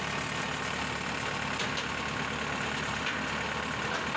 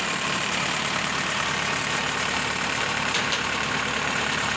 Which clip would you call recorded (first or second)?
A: first